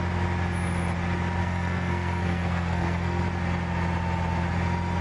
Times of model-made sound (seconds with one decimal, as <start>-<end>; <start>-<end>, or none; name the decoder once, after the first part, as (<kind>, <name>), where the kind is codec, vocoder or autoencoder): 1.4-3.2 (codec, SNAC)